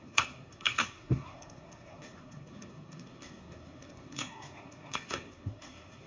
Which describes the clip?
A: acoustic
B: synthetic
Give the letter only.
B